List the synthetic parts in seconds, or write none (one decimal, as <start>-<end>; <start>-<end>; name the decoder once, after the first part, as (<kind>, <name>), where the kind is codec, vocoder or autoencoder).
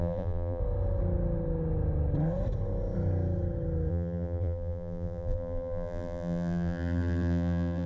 0.0-0.6 (vocoder, BigVGAN v2); 3.9-7.9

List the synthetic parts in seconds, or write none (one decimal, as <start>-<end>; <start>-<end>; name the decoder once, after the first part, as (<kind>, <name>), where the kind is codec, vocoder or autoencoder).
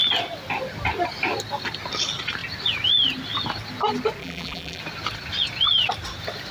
4.2-4.8 (vocoder, BigVGAN v2)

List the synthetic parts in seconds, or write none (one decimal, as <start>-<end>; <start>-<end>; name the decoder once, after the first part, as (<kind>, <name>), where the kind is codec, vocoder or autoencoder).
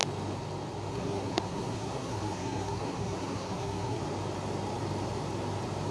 0.9-4.0 (codec, SNAC)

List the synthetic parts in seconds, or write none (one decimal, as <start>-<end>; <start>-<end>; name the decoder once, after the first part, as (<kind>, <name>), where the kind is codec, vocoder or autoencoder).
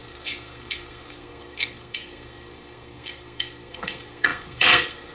0.0-5.1 (codec, SNAC)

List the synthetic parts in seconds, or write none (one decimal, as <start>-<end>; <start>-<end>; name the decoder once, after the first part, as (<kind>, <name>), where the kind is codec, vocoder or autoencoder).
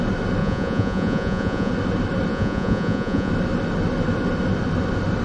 0.4-1.7 (vocoder, Vocos); 2.3-3.3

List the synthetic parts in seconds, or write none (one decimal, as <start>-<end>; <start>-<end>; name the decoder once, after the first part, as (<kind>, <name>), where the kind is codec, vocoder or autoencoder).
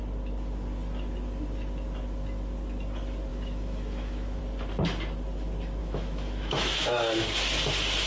3.3-4.4 (autoencoder, DAC-VAE); 5.8-7.1